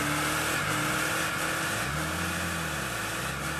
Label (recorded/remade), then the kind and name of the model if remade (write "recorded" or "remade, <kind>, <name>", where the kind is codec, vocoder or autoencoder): recorded